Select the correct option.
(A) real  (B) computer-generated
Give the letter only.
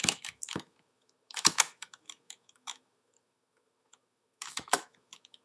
B